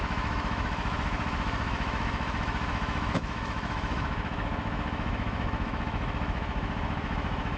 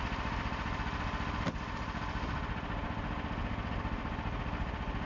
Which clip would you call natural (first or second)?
second